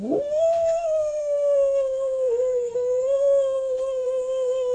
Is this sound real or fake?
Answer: fake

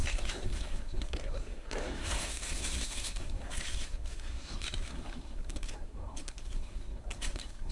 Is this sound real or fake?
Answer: fake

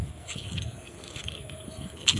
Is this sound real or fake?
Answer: fake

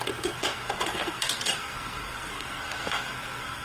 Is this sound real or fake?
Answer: fake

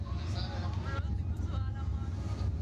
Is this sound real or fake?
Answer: real